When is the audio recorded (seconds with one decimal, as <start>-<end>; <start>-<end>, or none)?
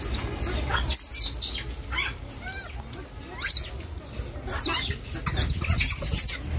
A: 0.0-6.6